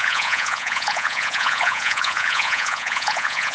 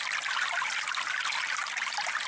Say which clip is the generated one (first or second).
first